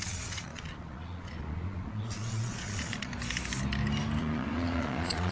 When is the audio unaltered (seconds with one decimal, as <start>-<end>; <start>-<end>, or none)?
3.1-4.2